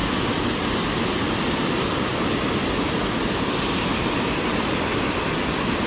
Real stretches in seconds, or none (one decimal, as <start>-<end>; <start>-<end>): 0.0-5.9